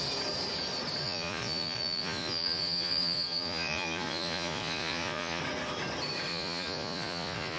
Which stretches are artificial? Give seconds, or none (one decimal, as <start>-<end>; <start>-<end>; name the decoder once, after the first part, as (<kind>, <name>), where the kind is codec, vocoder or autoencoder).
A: 1.0-5.4 (vocoder, Vocos); 6.3-7.6